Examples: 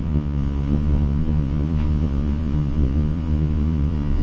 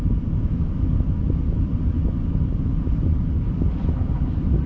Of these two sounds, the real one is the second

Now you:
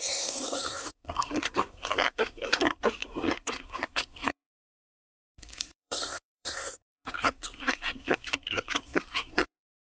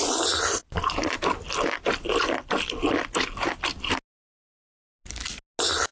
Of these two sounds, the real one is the second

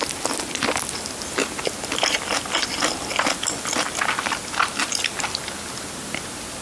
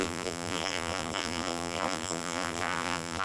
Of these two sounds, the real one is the first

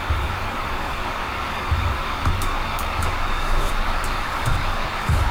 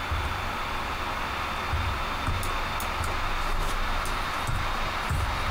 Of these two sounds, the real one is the second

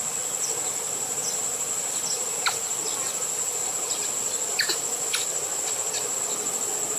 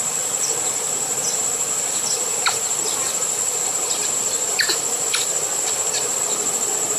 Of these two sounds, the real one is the first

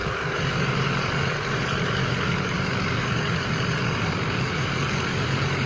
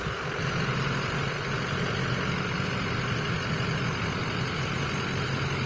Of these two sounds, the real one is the second